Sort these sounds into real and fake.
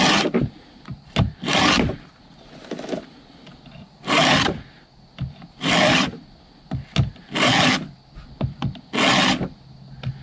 real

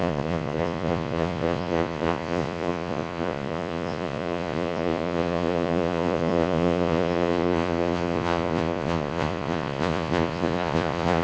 fake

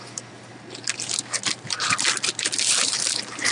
real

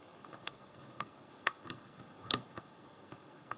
fake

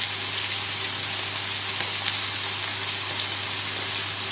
real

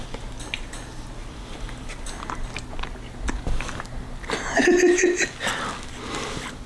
real